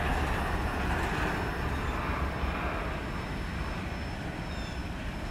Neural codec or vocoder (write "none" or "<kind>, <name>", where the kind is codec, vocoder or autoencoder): none